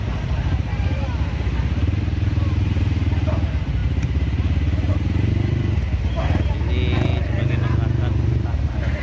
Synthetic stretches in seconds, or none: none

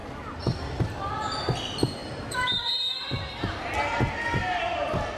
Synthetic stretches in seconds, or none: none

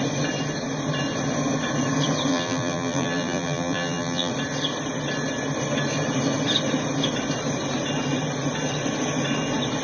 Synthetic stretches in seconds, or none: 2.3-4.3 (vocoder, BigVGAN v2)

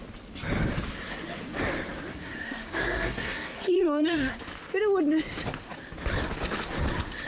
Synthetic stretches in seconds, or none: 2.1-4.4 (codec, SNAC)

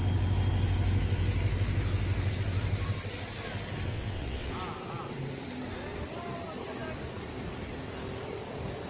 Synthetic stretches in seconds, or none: 3.9-4.5 (vocoder, WaveNeXt)